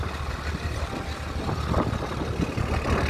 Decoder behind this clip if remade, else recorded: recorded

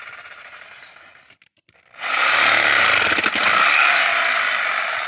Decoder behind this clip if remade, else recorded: recorded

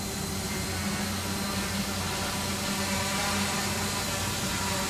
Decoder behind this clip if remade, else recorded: recorded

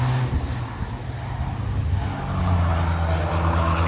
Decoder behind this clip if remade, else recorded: recorded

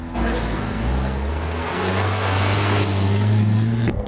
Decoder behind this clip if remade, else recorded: remade, codec, SNAC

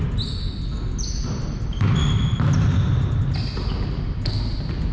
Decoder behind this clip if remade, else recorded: recorded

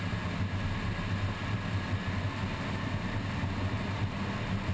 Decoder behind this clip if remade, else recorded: recorded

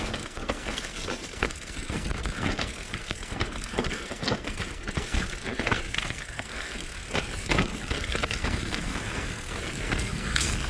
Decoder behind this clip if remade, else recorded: remade, codec, SNAC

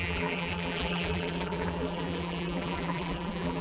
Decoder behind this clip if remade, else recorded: remade, vocoder, BigVGAN v2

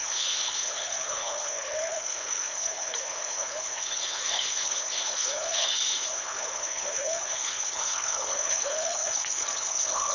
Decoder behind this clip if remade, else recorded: remade, codec, HILCodec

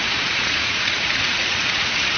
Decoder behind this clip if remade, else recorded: remade, vocoder, Vocos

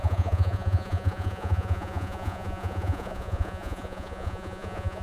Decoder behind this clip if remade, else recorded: remade, vocoder, Vocos